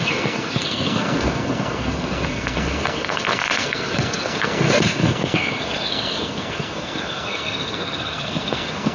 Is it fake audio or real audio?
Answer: fake